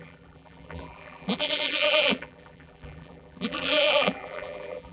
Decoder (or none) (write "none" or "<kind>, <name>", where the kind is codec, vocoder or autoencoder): vocoder, BigVGAN v2